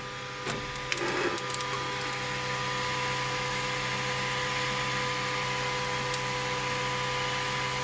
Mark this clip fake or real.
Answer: real